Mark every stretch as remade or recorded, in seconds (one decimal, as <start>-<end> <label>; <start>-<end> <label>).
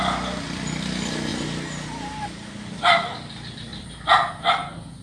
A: 0.0-3.7 recorded; 3.7-4.5 remade; 4.5-5.0 recorded